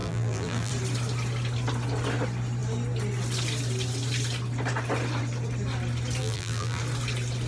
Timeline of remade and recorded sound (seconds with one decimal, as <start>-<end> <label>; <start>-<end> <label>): 0.0-0.7 remade; 0.7-6.2 recorded; 6.2-6.8 remade; 6.8-7.5 recorded